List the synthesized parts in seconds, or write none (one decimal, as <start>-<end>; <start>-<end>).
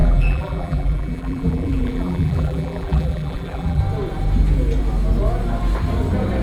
0.0-3.8